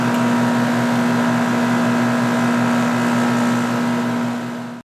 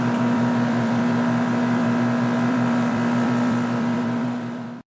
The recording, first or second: first